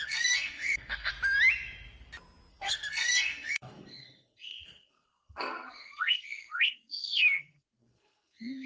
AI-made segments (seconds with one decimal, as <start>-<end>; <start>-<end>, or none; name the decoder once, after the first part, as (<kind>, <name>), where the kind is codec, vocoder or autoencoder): 0.0-1.1 (codec, SNAC); 2.5-8.7

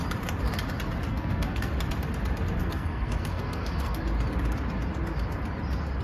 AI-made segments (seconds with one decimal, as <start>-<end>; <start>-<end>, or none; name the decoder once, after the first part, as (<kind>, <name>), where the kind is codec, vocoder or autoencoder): 1.1-1.7 (codec, SNAC); 2.6-4.0

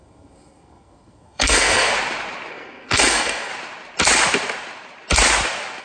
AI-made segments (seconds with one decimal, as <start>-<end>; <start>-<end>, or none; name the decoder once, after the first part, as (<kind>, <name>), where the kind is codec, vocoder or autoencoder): 0.0-1.9 (codec, SNAC); 2.5-3.5

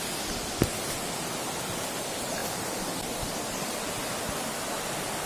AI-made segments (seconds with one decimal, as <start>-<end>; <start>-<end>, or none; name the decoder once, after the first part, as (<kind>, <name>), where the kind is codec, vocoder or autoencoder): none

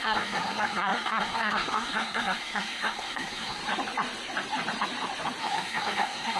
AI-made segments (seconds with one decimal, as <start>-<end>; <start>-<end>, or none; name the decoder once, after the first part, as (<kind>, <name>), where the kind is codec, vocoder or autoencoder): 0.0-3.6 (codec, SNAC); 5.4-6.4

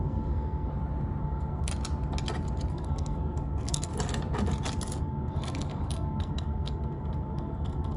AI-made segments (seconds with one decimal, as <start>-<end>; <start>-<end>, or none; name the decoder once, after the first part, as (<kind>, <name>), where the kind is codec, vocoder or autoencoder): 0.0-0.7 (codec, SNAC); 1.2-1.7; 2.7-3.9; 5.0-8.0